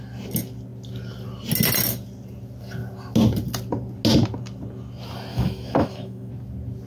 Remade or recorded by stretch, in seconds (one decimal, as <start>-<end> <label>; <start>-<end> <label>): 0.0-5.3 recorded; 5.3-6.3 remade; 6.3-6.9 recorded